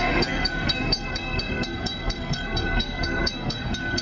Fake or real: fake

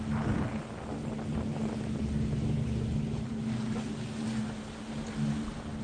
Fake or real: real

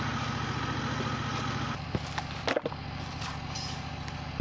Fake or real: real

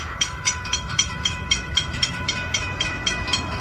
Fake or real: fake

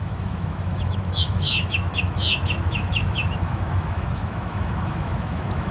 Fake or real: fake